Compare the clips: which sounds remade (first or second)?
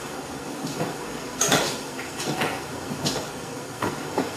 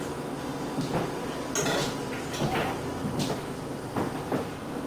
first